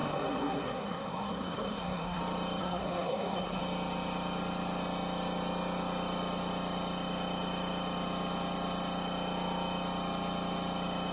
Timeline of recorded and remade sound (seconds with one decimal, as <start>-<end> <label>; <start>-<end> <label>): 0.0-2.2 remade; 2.2-2.6 recorded; 2.6-3.6 remade; 3.6-11.1 recorded